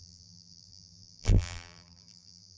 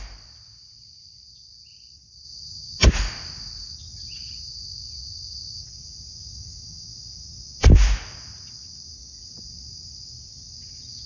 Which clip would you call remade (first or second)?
first